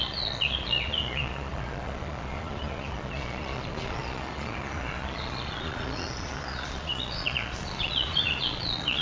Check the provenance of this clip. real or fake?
fake